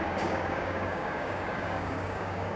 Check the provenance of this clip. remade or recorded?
remade